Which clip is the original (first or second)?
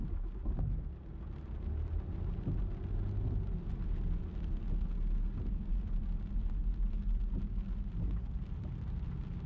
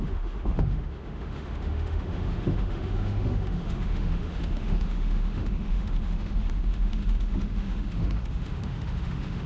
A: first